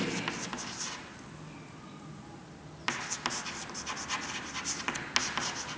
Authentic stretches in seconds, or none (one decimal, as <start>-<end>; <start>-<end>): 0.0-5.8